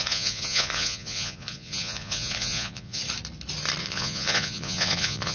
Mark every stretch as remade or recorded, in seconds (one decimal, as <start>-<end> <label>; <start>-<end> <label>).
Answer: 0.0-3.0 remade; 3.0-3.8 recorded; 3.8-5.3 remade